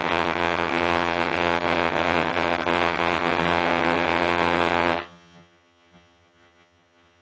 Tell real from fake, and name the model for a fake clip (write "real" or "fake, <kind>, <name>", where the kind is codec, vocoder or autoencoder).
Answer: fake, vocoder, HiFi-GAN